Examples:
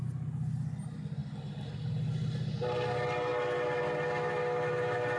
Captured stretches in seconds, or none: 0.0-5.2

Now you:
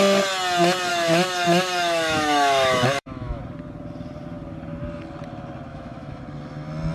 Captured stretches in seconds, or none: 0.0-0.9; 3.4-5.7; 6.2-6.9

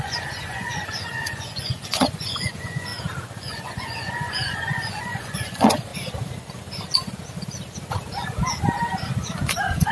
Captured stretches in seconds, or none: 2.9-3.4; 5.9-9.9

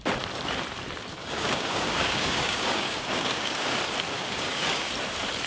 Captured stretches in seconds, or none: 0.0-1.2; 3.8-4.2; 4.9-5.5

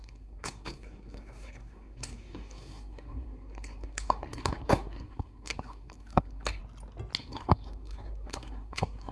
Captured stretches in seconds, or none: 6.6-7.2

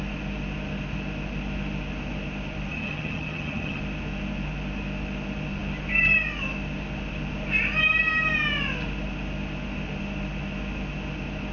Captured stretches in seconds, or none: 0.0-2.7; 3.8-11.5

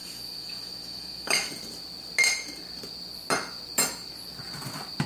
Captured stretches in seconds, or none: 1.5-5.1

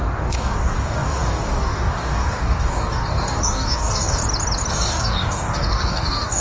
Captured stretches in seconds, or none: 4.2-4.7